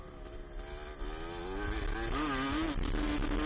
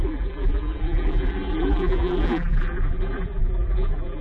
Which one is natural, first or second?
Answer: first